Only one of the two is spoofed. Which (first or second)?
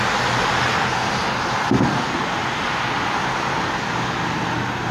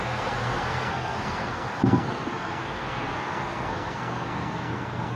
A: second